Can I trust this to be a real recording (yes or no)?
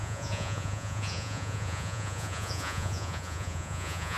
no